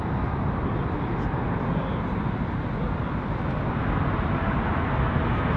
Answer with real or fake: real